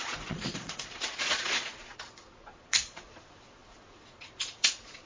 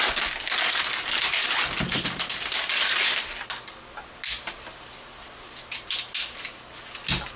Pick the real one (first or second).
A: second